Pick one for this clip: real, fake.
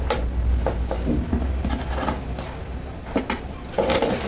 real